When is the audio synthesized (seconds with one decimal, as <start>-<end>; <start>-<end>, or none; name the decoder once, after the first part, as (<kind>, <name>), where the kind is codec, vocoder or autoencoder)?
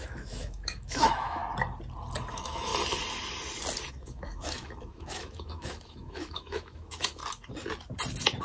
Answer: 0.0-1.4 (autoencoder, DAC-VAE); 2.3-2.7; 3.9-7.2